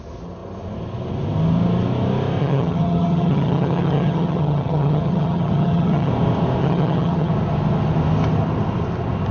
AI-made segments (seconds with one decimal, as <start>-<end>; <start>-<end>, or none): 2.4-6.1; 6.6-7.3